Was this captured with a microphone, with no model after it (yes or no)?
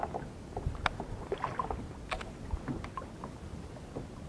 yes